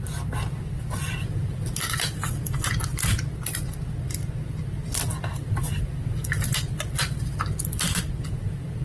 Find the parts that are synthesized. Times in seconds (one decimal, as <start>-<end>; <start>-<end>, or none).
none